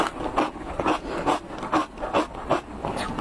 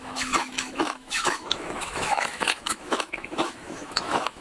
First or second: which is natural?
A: first